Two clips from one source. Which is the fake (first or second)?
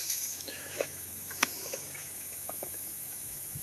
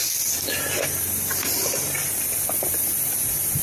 first